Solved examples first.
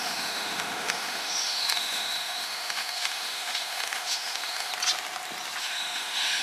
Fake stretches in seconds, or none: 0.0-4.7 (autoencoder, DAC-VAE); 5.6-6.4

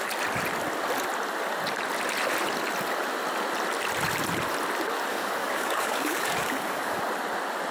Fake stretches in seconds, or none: 5.1-7.0 (codec, DAC)

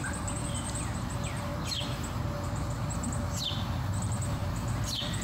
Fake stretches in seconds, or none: 0.0-1.5 (vocoder, BigVGAN v2); 3.8-5.2

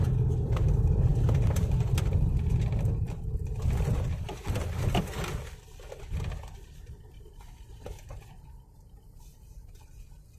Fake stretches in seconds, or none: none

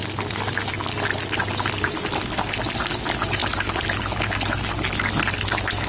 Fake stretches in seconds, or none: 3.4-4.0 (vocoder, BigVGAN v2)

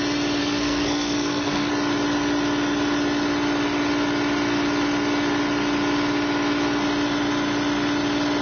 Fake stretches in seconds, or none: 0.4-1.7 (codec, SNAC)

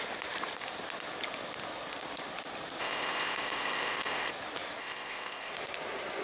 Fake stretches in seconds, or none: 2.8-4.3 (codec, ZipCodec); 4.8-5.5